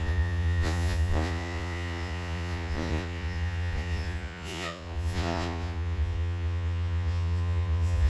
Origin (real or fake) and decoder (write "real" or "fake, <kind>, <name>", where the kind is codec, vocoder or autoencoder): fake, vocoder, Vocos